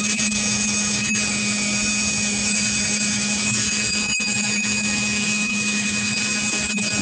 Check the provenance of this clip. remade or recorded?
remade